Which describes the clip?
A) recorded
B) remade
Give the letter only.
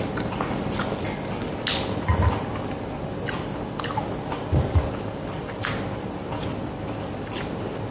A